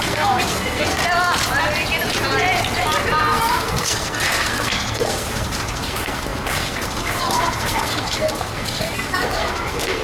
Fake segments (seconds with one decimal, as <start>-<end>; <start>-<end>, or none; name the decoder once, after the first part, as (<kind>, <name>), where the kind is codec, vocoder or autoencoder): 0.0-1.0 (codec, SNAC); 3.2-10.0